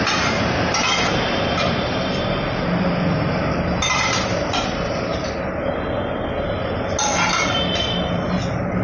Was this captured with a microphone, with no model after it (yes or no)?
yes